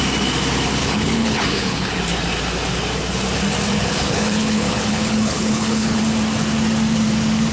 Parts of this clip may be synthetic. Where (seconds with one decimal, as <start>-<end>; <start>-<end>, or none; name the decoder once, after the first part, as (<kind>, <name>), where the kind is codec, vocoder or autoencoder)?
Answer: 0.8-2.0 (codec, HILCodec); 3.7-6.0